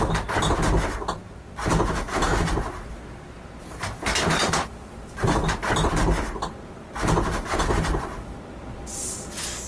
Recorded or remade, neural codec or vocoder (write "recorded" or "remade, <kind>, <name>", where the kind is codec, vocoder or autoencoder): recorded